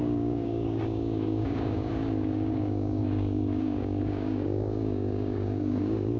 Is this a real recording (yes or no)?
no